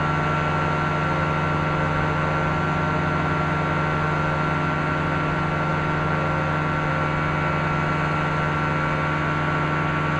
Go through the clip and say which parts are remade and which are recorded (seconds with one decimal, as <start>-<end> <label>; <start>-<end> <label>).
0.0-10.2 recorded

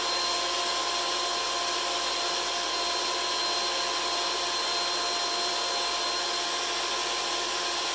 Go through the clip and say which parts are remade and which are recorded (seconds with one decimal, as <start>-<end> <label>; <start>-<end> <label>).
0.0-7.9 recorded

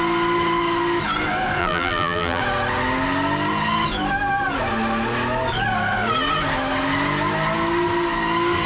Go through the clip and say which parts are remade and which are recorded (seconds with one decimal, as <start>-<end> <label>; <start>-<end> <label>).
0.0-1.6 recorded; 1.6-2.4 remade; 2.4-8.7 recorded

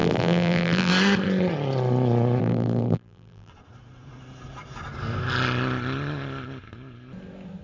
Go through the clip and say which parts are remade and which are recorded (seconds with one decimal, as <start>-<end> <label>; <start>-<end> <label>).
0.0-0.9 remade; 0.9-2.4 recorded; 2.4-3.5 remade; 3.5-7.6 recorded

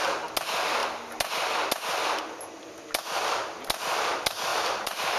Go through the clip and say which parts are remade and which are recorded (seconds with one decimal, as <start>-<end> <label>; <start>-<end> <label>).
0.0-4.5 recorded; 4.5-5.2 remade

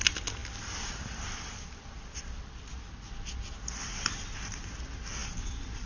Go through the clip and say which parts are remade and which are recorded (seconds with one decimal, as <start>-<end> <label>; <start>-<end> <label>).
0.0-0.4 recorded; 0.4-3.9 remade; 3.9-5.2 recorded; 5.2-5.9 remade